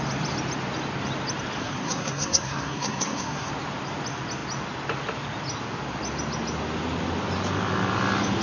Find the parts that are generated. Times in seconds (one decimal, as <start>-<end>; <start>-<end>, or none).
1.6-3.5